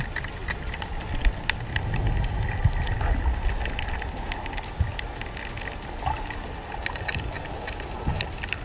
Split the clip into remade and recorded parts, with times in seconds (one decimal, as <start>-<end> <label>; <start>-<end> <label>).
0.0-8.6 recorded